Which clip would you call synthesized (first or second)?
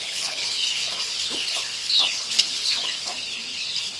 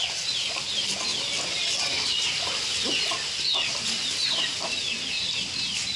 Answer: first